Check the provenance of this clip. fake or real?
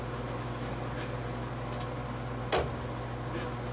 real